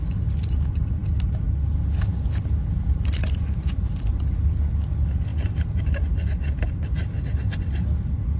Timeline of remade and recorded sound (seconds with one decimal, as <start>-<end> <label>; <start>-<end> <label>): 0.0-5.3 recorded; 5.3-6.2 remade; 6.2-8.4 recorded